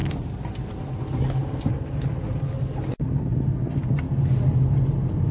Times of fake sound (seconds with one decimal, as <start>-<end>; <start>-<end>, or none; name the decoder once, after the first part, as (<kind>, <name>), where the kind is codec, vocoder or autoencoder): none